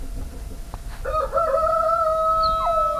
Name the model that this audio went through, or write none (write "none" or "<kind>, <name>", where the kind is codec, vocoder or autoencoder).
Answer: none